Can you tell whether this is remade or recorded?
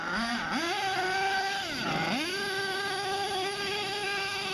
recorded